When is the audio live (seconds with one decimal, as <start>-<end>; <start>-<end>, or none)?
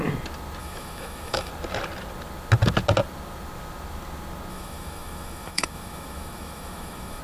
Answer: 0.0-0.6; 1.5-4.5